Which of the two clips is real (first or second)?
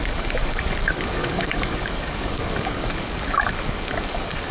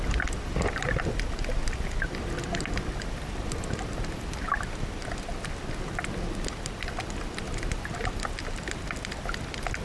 second